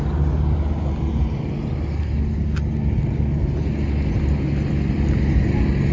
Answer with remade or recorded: recorded